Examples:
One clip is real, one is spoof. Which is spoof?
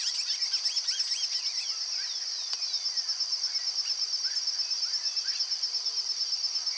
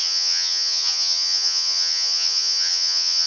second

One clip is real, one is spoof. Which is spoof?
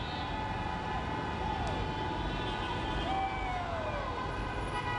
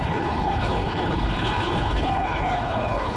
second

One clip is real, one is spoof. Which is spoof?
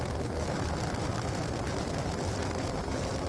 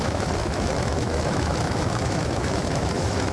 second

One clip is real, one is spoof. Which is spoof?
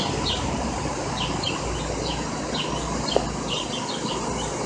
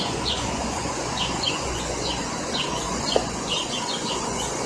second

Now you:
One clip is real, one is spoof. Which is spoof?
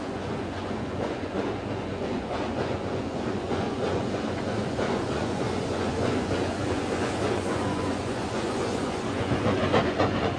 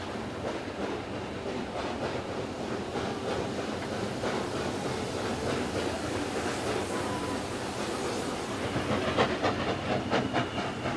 first